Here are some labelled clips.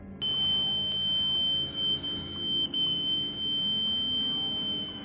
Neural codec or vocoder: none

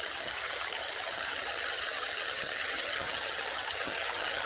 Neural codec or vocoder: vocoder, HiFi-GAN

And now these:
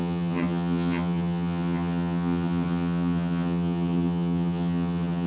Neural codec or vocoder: vocoder, HiFi-GAN